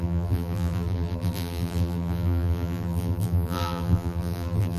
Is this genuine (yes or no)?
no